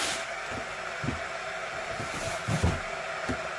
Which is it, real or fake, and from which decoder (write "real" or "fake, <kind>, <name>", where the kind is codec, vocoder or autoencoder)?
real